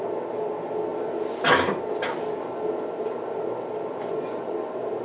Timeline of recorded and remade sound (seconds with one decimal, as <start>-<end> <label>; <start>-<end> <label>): 0.0-3.9 recorded; 3.9-4.5 remade; 4.5-5.0 recorded